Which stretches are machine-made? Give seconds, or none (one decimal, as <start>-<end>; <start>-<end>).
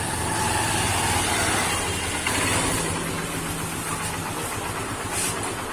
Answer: none